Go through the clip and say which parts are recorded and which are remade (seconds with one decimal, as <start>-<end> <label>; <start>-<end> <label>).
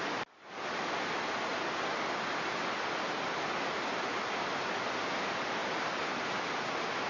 0.0-7.1 recorded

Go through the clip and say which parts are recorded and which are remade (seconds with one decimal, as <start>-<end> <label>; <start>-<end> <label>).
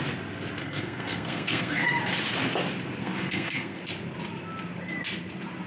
0.0-0.6 recorded; 0.6-1.9 remade; 1.9-3.0 recorded; 3.0-3.8 remade; 3.8-5.7 recorded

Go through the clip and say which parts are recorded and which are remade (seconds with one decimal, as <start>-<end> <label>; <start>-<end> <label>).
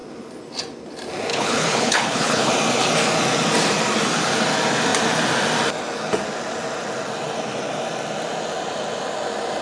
0.0-1.3 recorded; 1.3-2.5 remade; 2.5-9.6 recorded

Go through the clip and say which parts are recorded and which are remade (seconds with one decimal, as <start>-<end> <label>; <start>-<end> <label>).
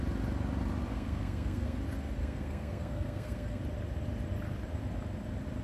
0.0-0.9 recorded; 0.9-1.8 remade; 1.8-2.2 recorded; 2.2-3.6 remade; 3.6-5.6 recorded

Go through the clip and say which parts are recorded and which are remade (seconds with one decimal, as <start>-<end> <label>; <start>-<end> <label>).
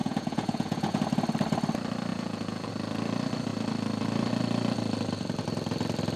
0.0-1.0 remade; 1.0-2.1 recorded; 2.1-2.7 remade; 2.7-6.2 recorded